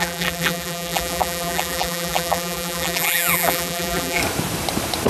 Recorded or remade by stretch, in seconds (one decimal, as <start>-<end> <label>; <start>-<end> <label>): 0.0-4.2 remade; 4.2-5.1 recorded